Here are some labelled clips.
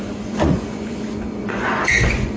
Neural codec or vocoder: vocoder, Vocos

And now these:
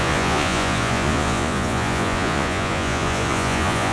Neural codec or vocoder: vocoder, Vocos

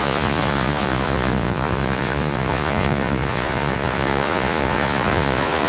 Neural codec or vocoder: vocoder, Vocos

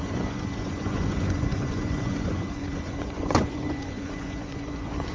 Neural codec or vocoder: vocoder, Vocos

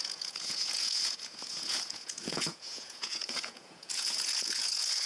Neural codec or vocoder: vocoder, Vocos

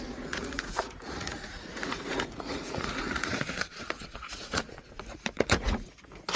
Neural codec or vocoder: vocoder, Vocos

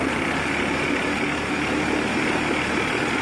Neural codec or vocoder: none